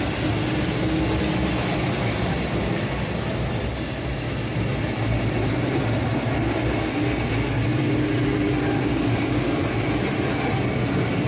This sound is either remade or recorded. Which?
recorded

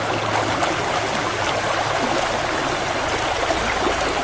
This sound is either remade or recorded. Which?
recorded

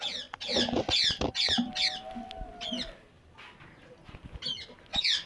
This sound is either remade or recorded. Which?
recorded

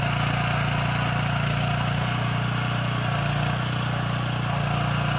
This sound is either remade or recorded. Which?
recorded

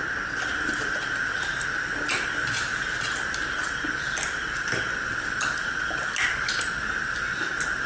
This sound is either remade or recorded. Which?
recorded